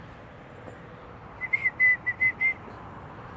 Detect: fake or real real